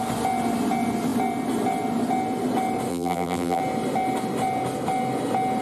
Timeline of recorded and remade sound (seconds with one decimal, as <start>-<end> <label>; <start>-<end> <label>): 0.0-2.9 recorded; 2.9-3.6 remade; 3.6-5.6 recorded